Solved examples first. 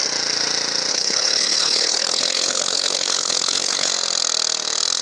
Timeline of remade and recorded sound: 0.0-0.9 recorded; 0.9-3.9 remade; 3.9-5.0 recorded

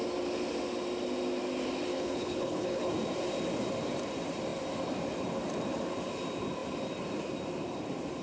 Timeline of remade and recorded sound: 0.0-1.9 recorded; 1.9-2.9 remade; 2.9-8.2 recorded

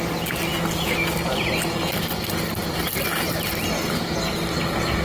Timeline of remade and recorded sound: 0.0-5.0 recorded

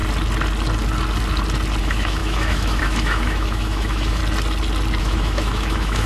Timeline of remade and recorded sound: 0.0-1.8 recorded; 1.8-4.2 remade; 4.2-5.0 recorded; 5.0-6.1 remade